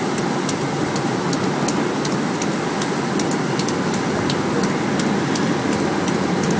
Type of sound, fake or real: real